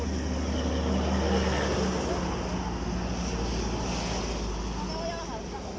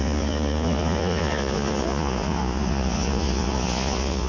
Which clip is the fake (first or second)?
second